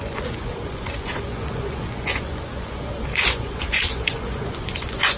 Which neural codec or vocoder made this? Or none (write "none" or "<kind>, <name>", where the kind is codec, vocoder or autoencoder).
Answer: vocoder, Vocos